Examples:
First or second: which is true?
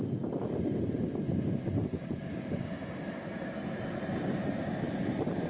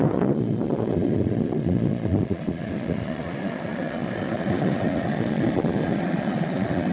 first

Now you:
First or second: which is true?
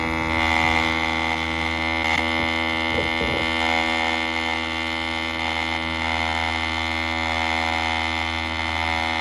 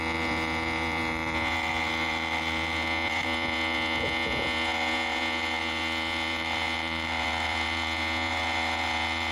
first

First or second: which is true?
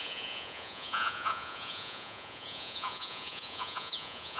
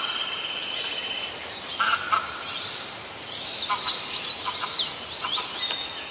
second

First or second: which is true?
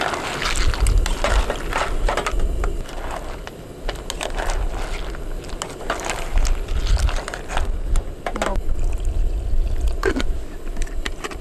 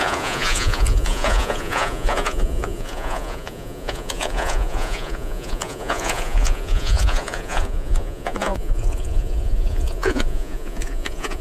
first